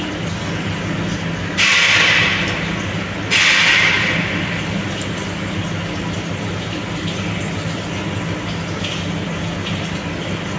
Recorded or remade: recorded